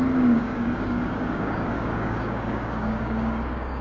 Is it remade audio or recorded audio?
remade